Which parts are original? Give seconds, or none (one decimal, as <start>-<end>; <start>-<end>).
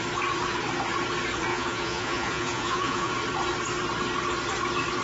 0.0-1.5; 3.1-5.0